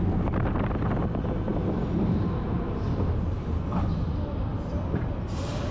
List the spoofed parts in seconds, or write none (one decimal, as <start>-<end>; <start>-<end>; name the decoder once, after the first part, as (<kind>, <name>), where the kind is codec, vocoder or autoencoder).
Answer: none